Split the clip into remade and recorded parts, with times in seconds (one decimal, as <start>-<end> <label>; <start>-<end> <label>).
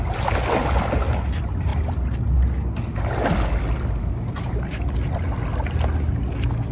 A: 0.0-6.7 recorded